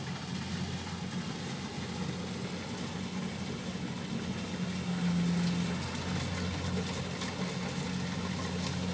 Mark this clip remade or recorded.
recorded